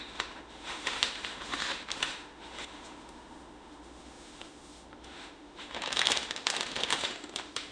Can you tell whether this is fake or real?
fake